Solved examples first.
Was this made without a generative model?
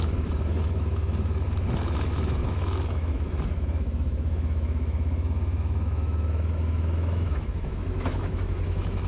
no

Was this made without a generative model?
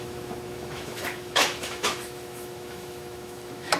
no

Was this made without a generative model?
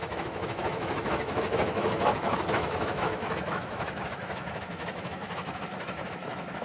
no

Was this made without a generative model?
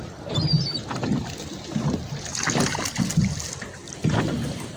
yes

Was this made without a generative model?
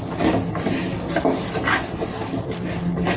yes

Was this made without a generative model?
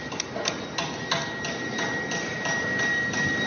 yes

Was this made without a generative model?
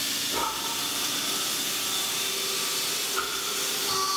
yes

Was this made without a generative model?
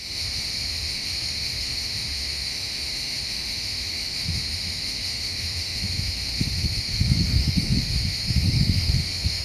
no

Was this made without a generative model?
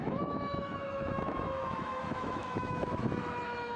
no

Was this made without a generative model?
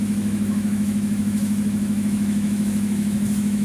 no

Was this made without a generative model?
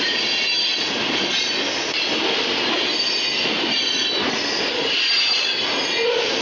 yes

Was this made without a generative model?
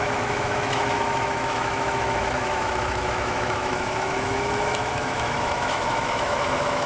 no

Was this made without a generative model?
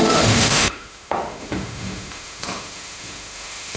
no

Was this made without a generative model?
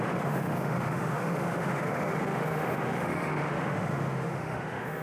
no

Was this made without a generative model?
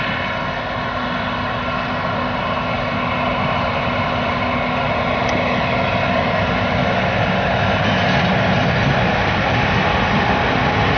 yes